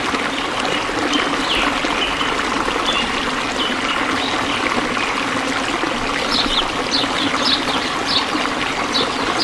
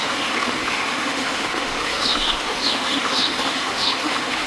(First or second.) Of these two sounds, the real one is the first